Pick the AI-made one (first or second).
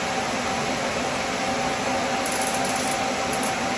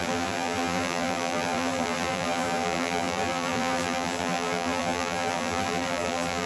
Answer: second